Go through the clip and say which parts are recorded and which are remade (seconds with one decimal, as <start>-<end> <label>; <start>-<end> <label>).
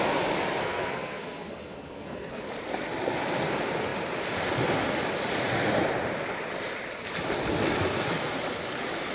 0.0-0.6 recorded; 0.6-2.4 remade; 2.4-9.1 recorded